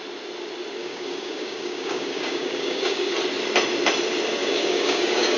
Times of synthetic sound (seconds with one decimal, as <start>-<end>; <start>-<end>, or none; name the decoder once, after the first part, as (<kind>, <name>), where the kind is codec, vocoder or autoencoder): 0.8-3.1 (codec, DAC); 4.4-5.4